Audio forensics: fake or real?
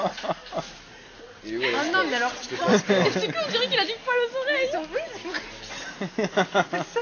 real